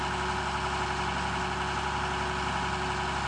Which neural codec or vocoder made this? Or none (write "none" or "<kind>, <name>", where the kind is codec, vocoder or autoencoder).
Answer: none